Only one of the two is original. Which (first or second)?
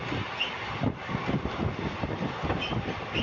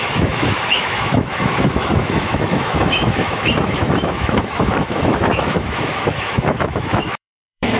first